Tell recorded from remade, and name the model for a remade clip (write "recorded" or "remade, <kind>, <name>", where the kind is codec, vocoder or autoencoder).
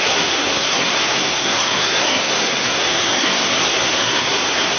remade, codec, SNAC